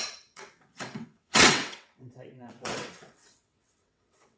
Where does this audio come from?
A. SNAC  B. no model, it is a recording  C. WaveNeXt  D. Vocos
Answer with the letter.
C